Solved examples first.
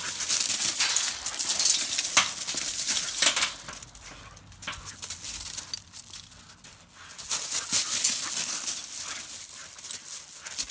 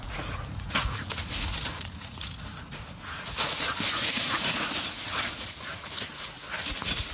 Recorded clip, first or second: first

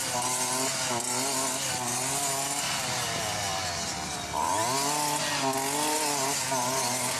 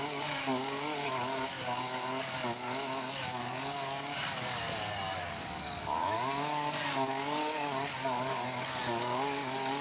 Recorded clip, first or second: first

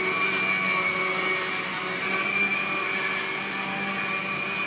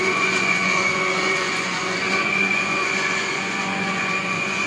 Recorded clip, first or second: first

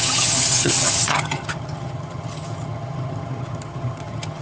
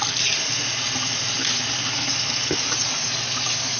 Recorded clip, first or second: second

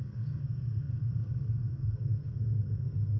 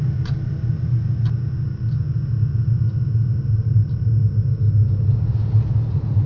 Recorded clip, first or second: second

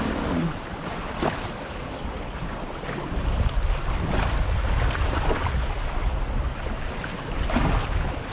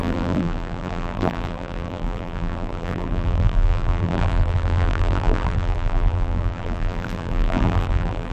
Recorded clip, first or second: first